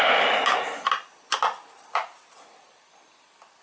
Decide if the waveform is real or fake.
real